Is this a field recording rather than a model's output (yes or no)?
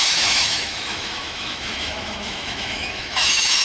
no